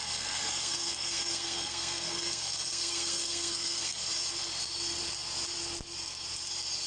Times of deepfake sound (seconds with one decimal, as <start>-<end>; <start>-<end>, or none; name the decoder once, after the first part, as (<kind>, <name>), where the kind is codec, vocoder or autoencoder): 0.0-4.1 (codec, SNAC)